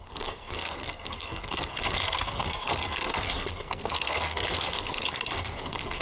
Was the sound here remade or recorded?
remade